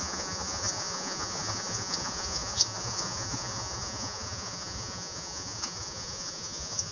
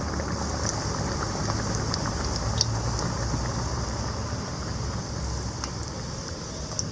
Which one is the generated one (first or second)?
first